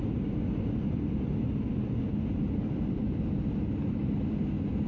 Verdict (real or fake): real